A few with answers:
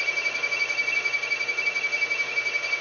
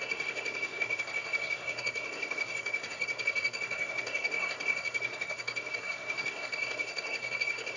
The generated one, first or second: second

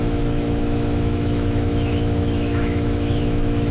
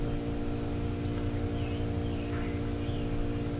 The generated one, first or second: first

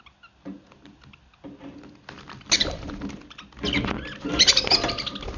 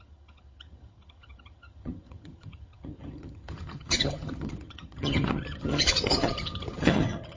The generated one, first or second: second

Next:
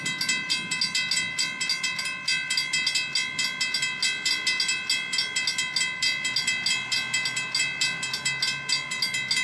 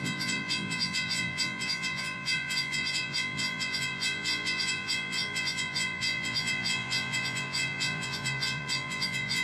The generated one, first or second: second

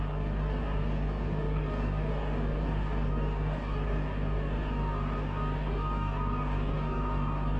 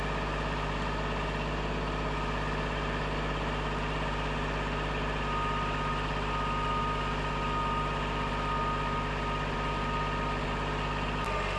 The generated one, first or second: first